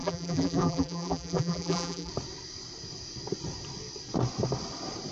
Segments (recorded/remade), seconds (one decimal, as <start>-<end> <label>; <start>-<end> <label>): 0.0-2.1 remade; 2.1-5.1 recorded